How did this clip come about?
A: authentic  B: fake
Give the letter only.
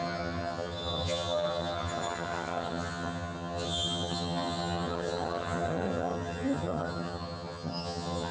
B